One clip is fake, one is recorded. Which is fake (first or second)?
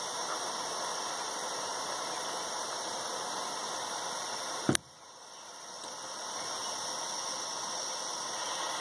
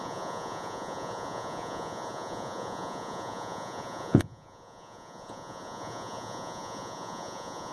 second